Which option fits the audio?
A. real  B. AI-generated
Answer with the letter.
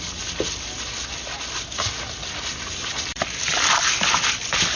B